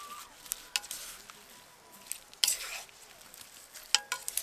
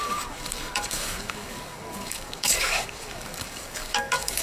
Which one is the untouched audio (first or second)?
first